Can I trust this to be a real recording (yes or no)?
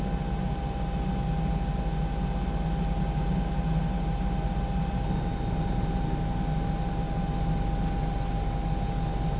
yes